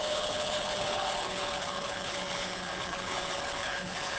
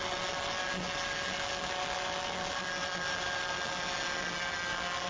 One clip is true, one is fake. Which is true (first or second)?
second